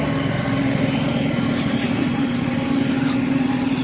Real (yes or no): yes